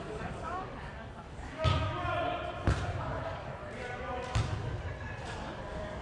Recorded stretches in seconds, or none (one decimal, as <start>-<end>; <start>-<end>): 1.7-3.0; 3.6-5.6